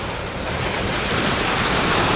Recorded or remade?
recorded